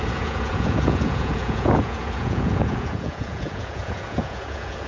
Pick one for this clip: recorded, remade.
remade